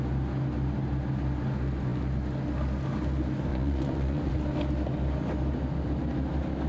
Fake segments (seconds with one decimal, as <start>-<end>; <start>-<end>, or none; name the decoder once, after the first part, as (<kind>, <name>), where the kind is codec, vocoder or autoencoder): 3.5-4.3 (vocoder, Vocos)